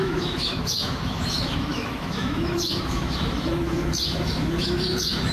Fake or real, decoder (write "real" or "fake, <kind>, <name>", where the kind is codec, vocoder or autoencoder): fake, autoencoder, DAC-VAE